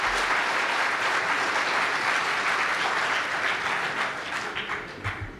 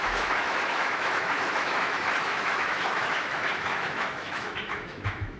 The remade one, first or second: second